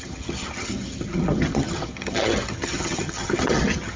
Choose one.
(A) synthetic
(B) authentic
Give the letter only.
A